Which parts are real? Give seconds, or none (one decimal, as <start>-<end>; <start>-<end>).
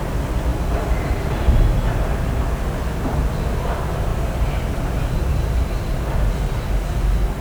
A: 0.0-7.4